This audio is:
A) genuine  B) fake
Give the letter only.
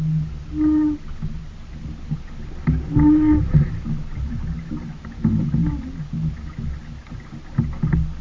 A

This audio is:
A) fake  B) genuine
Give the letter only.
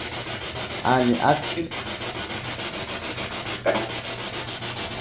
B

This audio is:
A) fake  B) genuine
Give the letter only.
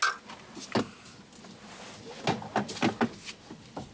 B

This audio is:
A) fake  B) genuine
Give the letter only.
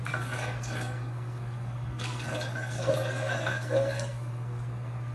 A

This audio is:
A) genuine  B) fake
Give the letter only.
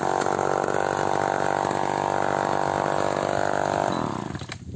A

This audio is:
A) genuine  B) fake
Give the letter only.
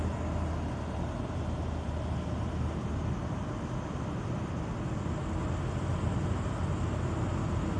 A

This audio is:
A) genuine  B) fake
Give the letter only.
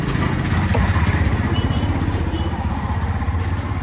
B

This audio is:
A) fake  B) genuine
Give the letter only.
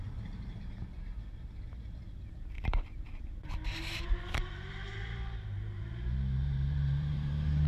A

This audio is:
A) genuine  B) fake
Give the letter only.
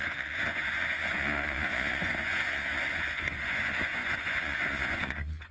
B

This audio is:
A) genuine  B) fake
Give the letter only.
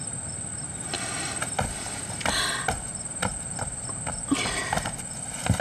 A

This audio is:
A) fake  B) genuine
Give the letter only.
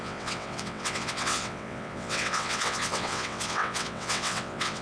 A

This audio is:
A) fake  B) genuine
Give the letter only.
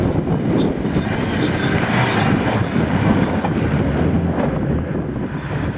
B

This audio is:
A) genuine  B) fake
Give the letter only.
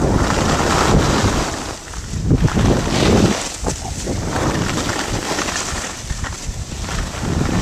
A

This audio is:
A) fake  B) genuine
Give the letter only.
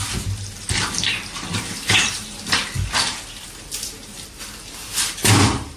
A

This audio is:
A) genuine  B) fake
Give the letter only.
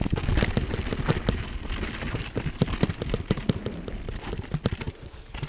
A